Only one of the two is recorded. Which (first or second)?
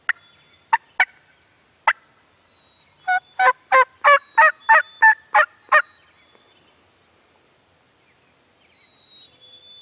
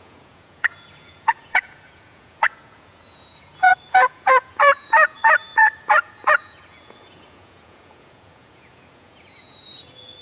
first